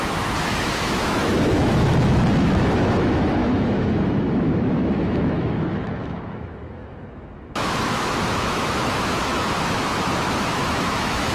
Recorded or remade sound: remade